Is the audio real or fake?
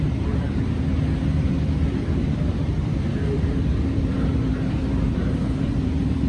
fake